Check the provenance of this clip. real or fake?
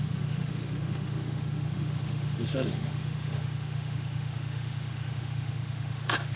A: fake